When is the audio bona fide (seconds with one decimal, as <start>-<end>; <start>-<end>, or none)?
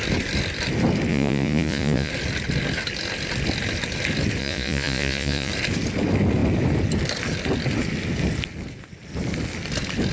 0.0-1.1; 2.1-4.4; 5.5-10.1